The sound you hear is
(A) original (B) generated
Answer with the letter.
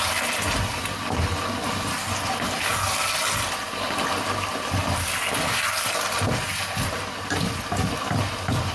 A